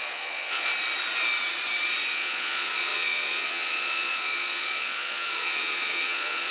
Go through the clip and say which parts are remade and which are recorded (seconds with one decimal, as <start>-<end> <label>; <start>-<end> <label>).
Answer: 0.0-0.7 remade; 0.7-2.1 recorded; 2.1-6.5 remade